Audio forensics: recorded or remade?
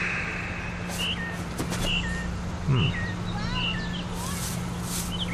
recorded